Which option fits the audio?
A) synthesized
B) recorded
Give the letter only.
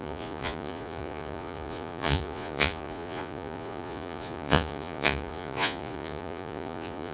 A